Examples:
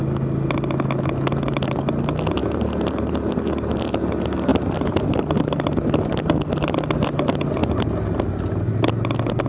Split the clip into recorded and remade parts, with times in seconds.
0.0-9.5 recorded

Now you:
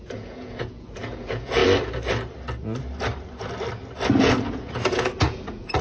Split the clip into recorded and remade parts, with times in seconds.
0.0-1.6 remade; 1.6-4.2 recorded; 4.2-5.8 remade

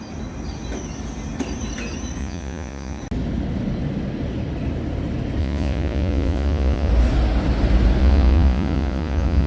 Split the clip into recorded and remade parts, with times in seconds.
0.0-2.2 recorded; 2.2-3.0 remade; 3.0-5.4 recorded; 5.4-6.9 remade; 6.9-8.0 recorded; 8.0-9.5 remade

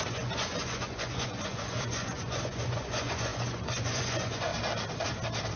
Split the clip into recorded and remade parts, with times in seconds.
0.0-4.5 remade; 4.5-5.6 recorded

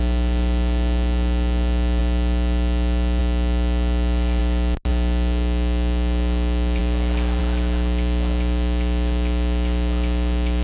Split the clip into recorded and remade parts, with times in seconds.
0.0-10.6 recorded

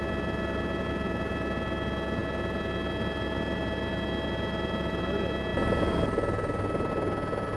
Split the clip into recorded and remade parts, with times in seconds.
0.0-7.6 recorded

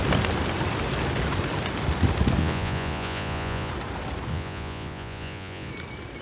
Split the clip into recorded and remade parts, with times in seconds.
0.0-2.4 recorded; 2.4-3.7 remade; 3.7-4.3 recorded; 4.3-5.7 remade; 5.7-6.2 recorded

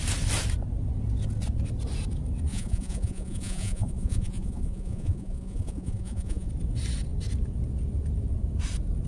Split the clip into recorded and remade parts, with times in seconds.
0.0-2.5 recorded; 2.5-6.5 remade; 6.5-9.1 recorded